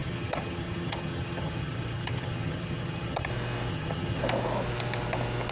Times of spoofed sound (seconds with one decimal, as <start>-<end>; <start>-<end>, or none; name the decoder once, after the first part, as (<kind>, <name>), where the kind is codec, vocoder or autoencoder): 0.0-3.3 (vocoder, HiFi-GAN); 3.7-4.2